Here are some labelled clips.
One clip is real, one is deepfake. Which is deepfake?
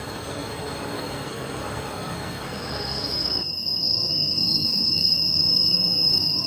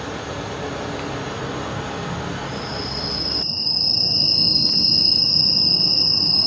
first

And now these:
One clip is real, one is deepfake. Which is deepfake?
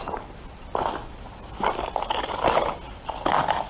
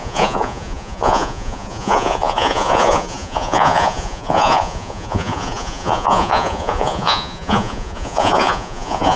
second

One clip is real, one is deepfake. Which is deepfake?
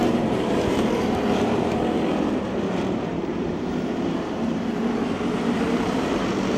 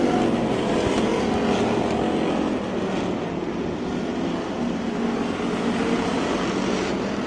first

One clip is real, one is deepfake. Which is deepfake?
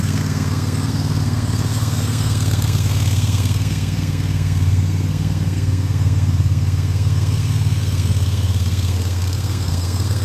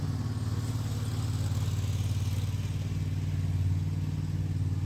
first